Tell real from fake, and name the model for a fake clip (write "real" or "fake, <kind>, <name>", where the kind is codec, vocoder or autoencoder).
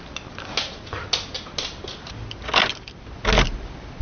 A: real